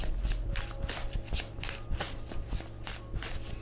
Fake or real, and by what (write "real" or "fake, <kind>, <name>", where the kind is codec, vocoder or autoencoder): real